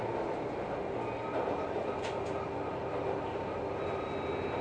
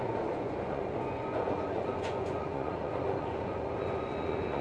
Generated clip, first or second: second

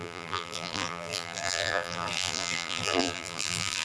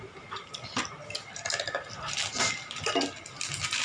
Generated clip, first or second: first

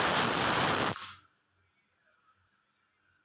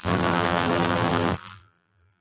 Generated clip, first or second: second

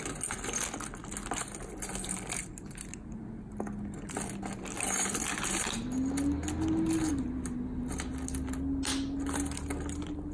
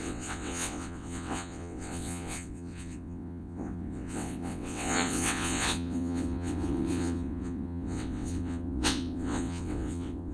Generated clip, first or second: second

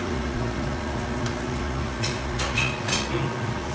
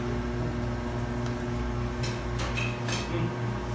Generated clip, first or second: first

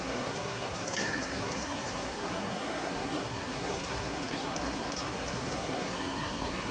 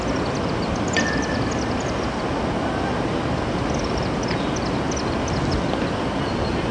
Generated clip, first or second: first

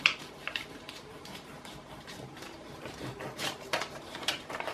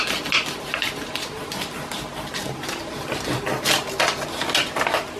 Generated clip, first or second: first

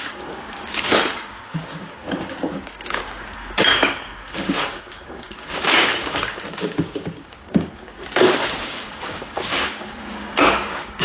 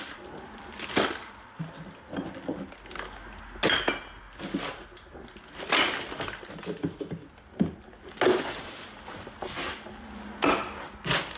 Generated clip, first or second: first